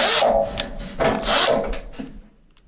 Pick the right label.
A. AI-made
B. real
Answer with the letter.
B